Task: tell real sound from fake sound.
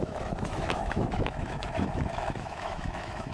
fake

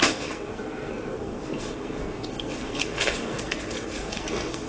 fake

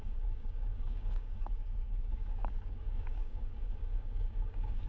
fake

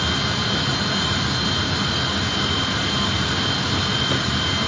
real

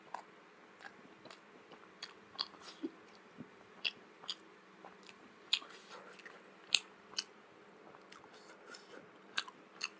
real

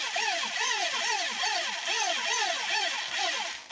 real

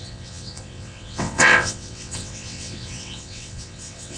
fake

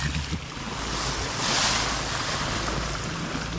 real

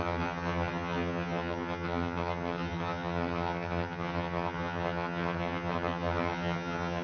fake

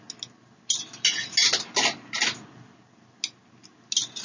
real